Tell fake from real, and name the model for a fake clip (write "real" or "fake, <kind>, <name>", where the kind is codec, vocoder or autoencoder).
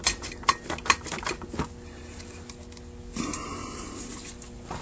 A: real